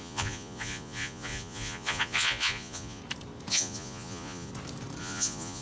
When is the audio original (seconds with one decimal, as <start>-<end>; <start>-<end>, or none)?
3.0-3.5; 4.5-5.0